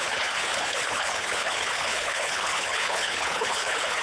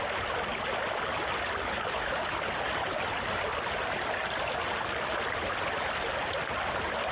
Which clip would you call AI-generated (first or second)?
first